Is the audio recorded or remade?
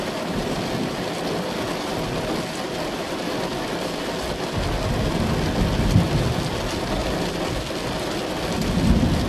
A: recorded